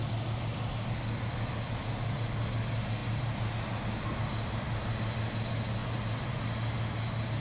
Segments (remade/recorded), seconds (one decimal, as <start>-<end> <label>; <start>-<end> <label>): 0.0-3.0 recorded; 3.0-3.5 remade; 3.5-5.8 recorded; 5.8-6.4 remade; 6.4-7.4 recorded